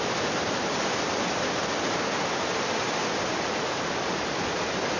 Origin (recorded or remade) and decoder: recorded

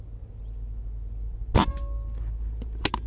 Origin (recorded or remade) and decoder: recorded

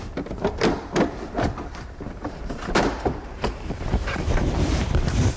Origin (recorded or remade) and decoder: remade, vocoder, BigVGAN v2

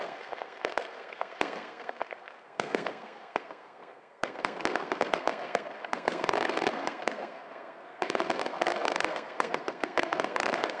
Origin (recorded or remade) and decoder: remade, codec, SNAC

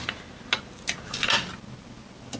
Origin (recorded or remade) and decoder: recorded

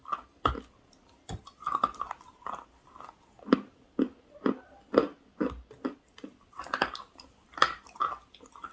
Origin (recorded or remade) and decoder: recorded